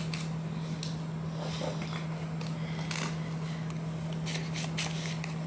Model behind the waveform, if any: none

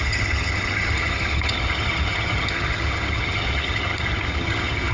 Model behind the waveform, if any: vocoder, HiFi-GAN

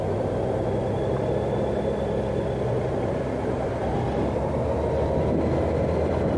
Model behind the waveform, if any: none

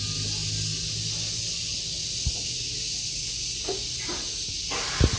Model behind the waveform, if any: none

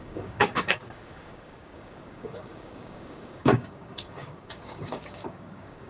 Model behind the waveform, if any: codec, DAC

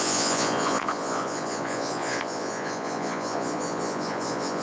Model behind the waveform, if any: vocoder, Vocos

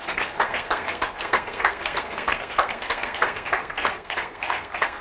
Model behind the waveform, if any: codec, SNAC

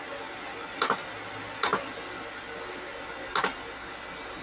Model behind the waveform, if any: none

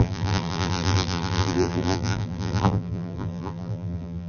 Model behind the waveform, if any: vocoder, BigVGAN v2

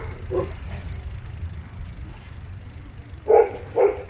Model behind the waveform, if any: none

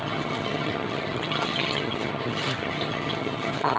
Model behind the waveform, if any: vocoder, HiFi-GAN